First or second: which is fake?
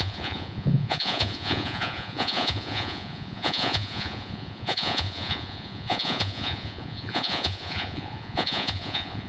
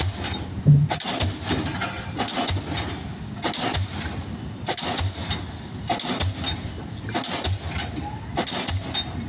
first